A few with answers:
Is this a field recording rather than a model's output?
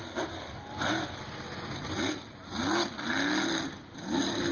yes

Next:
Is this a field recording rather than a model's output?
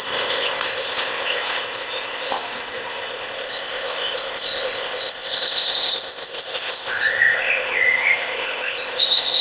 no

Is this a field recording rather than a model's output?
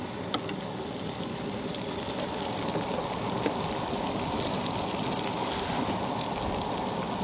yes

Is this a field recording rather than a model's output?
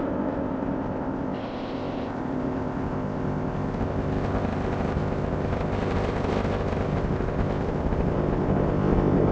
no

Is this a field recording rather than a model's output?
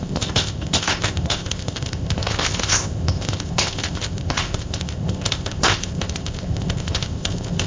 no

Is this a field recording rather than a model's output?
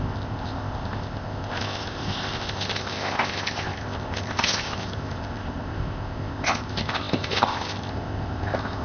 no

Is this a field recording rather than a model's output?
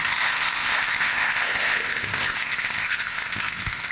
no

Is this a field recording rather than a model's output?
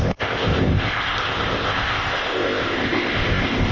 no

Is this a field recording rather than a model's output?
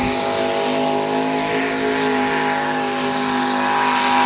yes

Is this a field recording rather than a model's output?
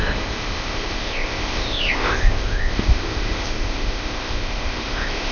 no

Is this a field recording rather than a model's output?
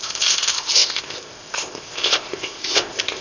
no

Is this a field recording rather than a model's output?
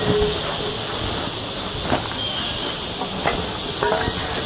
yes